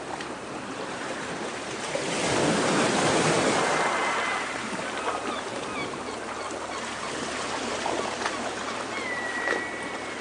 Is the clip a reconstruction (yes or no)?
yes